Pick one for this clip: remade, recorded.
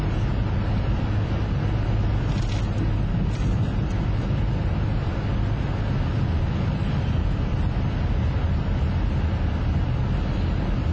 recorded